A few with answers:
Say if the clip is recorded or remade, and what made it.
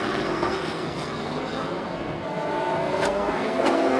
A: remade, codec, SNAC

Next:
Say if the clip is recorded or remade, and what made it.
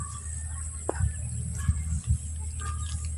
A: recorded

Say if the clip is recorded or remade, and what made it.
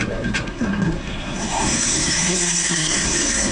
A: remade, codec, SNAC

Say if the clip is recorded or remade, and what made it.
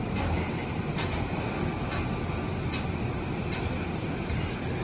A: recorded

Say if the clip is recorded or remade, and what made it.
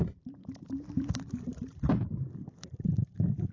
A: remade, vocoder, BigVGAN v2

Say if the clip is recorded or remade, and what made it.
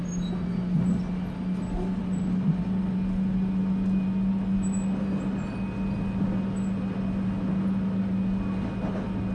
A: recorded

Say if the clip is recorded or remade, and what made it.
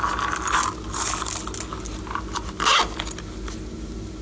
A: recorded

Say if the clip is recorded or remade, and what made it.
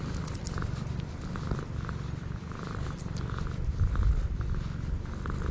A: recorded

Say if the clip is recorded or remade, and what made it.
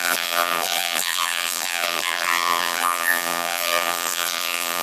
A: remade, vocoder, BigVGAN v2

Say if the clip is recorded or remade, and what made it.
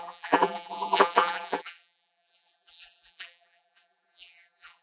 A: remade, vocoder, BigVGAN v2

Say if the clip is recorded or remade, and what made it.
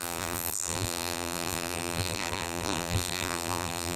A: remade, vocoder, BigVGAN v2